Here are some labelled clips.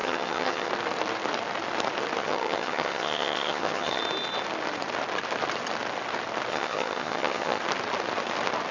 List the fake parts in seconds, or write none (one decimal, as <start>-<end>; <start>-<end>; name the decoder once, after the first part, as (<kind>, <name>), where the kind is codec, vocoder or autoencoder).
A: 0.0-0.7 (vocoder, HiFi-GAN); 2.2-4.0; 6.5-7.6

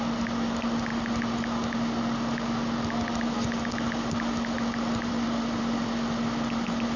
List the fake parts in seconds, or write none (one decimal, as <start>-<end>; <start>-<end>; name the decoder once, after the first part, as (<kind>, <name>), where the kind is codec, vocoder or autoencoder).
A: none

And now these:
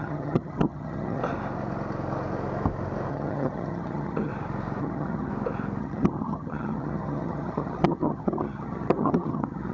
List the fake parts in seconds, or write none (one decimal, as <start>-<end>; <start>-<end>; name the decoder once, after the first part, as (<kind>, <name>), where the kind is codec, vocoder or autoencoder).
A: 0.0-1.2 (vocoder, HiFi-GAN); 3.1-4.3; 4.8-5.3; 5.8-9.7

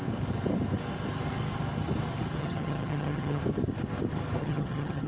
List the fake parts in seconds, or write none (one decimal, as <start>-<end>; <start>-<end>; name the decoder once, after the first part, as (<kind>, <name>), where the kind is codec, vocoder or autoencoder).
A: 2.4-3.4 (vocoder, HiFi-GAN); 4.4-5.1

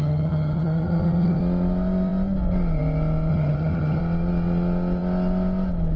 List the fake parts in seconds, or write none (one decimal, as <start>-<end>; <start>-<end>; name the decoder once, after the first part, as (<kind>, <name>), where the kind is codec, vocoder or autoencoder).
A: 0.0-1.4 (vocoder, HiFi-GAN); 3.3-4.0

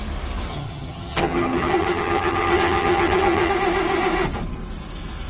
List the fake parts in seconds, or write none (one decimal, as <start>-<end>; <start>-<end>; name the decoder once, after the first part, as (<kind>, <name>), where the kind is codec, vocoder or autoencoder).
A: 0.5-3.5 (vocoder, HiFi-GAN)

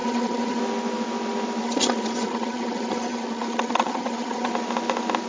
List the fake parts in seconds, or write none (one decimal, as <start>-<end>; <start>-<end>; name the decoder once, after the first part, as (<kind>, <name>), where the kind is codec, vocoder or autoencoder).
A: 0.0-0.6 (vocoder, HiFi-GAN); 1.6-4.5